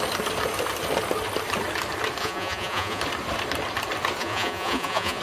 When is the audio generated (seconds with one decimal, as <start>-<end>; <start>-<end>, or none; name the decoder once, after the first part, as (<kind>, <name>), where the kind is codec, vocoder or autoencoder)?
2.2-3.0 (vocoder, Vocos); 4.2-5.2